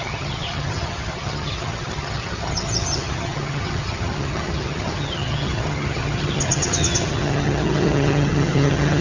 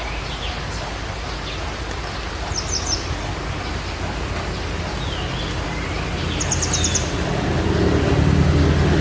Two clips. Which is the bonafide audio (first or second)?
second